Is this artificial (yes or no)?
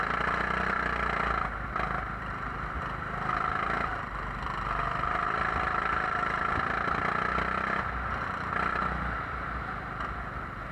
no